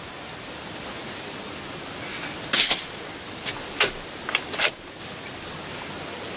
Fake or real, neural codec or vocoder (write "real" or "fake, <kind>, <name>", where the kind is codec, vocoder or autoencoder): real